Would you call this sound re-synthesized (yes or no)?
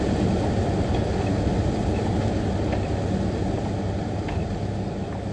no